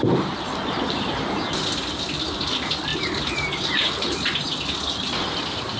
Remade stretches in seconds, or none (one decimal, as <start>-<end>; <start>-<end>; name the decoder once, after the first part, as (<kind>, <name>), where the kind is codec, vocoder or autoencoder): none